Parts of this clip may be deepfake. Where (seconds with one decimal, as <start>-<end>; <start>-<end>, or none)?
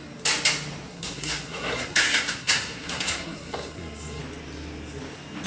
0.9-4.2